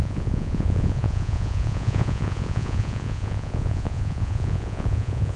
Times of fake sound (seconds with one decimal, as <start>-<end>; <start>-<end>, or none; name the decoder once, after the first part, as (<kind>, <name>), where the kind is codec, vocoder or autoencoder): 0.0-5.4 (vocoder, Vocos)